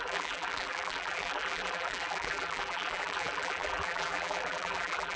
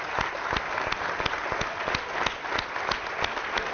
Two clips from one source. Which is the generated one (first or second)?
first